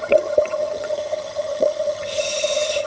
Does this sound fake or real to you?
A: fake